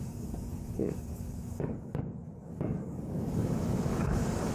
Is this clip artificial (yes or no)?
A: yes